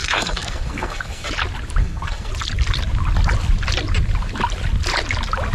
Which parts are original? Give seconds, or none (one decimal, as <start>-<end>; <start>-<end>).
1.3-1.8; 2.3-5.5